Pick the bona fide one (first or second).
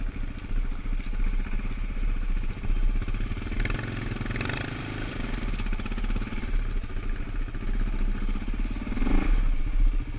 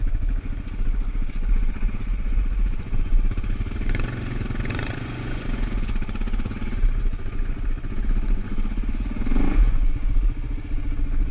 first